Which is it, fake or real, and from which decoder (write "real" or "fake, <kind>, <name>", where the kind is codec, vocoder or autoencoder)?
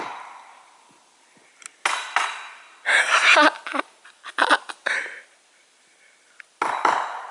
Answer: real